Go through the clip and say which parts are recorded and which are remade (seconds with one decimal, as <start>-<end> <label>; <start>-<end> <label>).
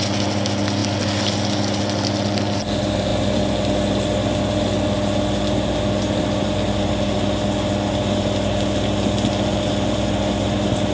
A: 0.0-10.9 recorded